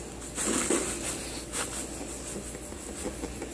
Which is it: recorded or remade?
recorded